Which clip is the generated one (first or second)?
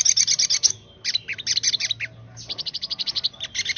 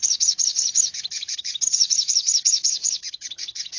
second